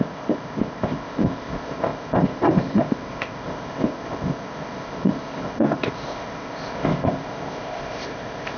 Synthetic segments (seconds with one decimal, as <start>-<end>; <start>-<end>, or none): 0.0-8.6